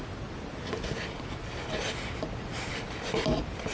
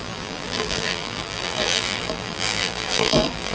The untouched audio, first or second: first